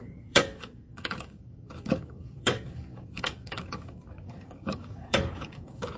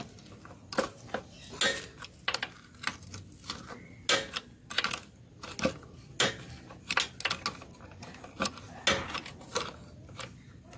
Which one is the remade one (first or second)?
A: first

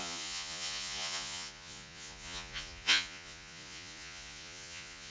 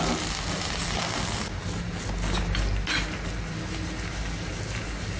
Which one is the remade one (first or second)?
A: first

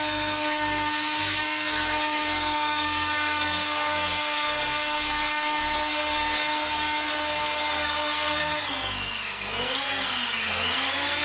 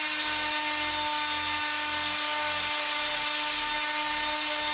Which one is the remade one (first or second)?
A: first